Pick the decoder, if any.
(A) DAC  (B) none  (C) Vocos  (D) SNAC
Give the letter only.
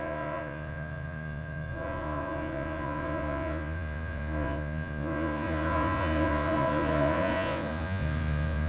C